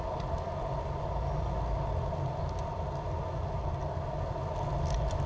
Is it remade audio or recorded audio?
recorded